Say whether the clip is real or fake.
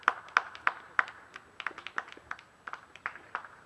real